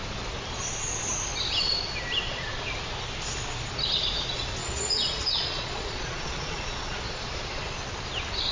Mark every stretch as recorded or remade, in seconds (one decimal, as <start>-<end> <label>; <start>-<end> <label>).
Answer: 0.0-4.6 recorded; 4.6-7.4 remade; 7.4-8.5 recorded